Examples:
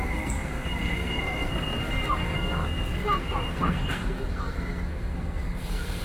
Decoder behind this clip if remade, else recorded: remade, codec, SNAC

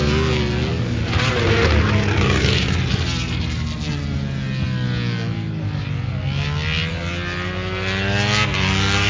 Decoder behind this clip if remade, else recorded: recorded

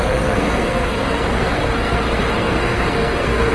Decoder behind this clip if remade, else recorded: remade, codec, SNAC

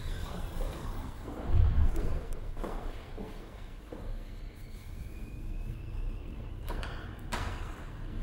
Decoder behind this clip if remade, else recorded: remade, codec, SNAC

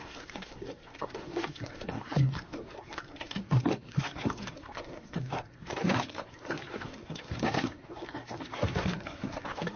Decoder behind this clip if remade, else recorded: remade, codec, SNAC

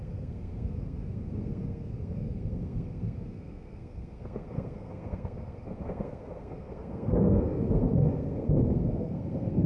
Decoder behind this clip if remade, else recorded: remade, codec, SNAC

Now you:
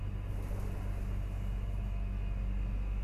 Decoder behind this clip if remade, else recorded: recorded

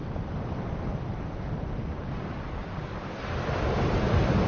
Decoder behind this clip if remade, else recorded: recorded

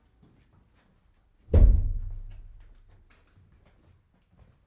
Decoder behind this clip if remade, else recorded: recorded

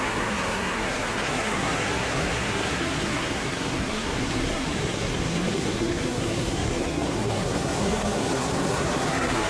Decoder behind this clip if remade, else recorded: remade, codec, SNAC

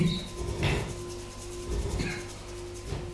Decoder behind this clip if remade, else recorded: recorded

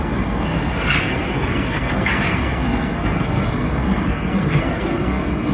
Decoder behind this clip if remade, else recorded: remade, codec, SNAC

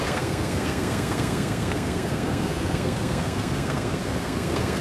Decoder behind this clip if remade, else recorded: remade, codec, SNAC